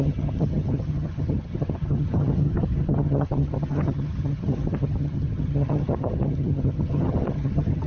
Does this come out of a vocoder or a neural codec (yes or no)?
yes